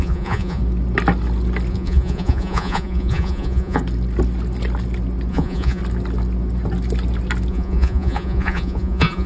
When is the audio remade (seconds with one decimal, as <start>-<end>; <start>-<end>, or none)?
0.0-0.6; 1.7-3.8; 5.3-5.8; 7.5-9.3